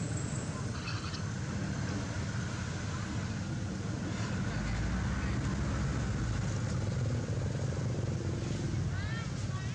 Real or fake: real